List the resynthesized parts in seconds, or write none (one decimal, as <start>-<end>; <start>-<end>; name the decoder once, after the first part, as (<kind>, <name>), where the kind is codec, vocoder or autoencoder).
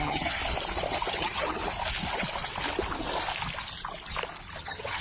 0.0-0.4 (vocoder, HiFi-GAN); 1.1-1.6; 4.6-5.0